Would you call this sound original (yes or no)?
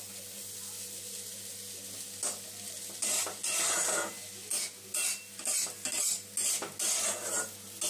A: yes